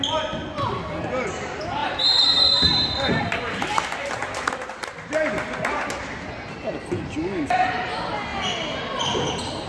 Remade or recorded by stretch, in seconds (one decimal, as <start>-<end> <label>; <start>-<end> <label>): 0.0-1.8 recorded; 1.8-3.2 remade; 3.2-9.7 recorded